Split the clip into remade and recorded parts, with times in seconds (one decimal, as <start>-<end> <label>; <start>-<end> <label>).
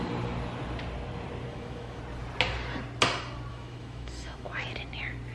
0.0-1.5 recorded; 1.5-2.0 remade; 2.0-3.5 recorded; 3.5-4.6 remade; 4.6-5.3 recorded